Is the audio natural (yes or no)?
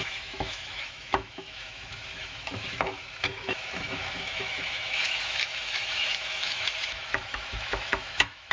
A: no